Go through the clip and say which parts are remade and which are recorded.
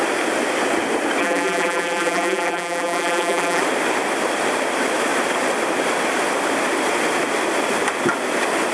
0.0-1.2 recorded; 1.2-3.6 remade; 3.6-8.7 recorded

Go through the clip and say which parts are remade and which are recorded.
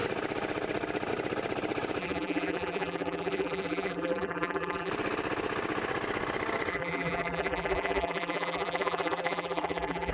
0.0-2.0 recorded; 2.0-4.9 remade; 4.9-6.7 recorded; 6.7-10.1 remade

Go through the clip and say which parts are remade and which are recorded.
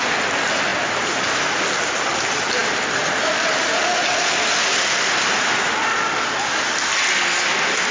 0.0-0.7 recorded; 0.7-1.4 remade; 1.4-7.9 recorded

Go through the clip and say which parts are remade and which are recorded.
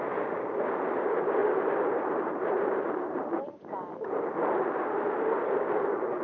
0.0-1.4 recorded; 1.4-3.7 remade; 3.7-6.2 recorded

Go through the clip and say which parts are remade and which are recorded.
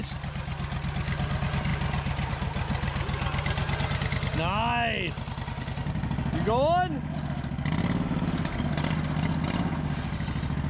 0.0-10.7 recorded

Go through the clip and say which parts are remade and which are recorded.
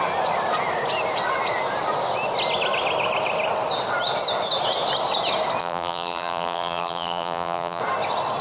0.0-5.6 recorded; 5.6-7.8 remade; 7.8-8.4 recorded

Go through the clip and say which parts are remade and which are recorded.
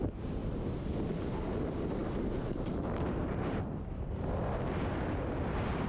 0.0-0.4 remade; 0.4-1.5 recorded; 1.5-5.9 remade